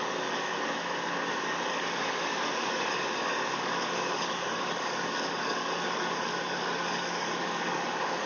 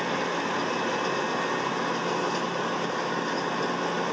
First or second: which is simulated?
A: first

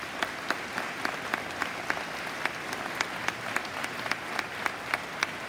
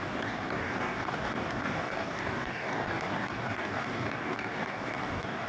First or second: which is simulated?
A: second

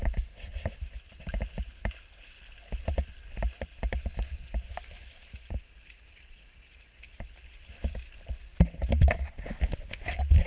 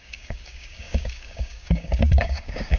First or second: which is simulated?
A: second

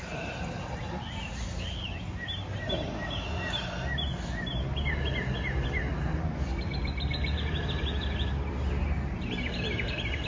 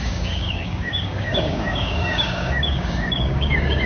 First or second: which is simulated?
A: second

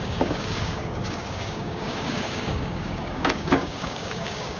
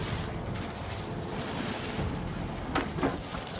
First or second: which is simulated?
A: first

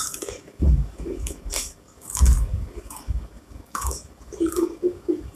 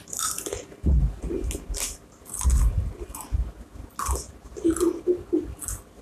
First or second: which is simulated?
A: first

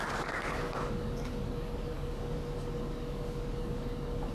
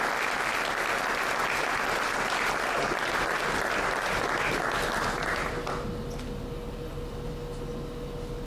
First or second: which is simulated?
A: first